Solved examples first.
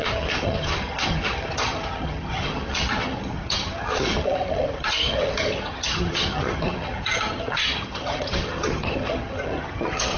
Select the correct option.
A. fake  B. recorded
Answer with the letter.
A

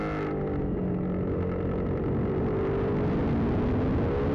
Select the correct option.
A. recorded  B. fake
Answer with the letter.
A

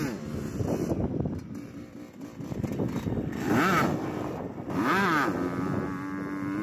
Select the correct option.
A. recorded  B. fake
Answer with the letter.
A